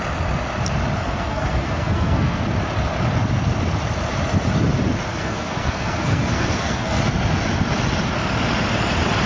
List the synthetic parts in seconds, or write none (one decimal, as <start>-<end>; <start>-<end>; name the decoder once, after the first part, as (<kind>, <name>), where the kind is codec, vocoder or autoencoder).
1.0-2.4 (codec, SNAC); 5.1-7.0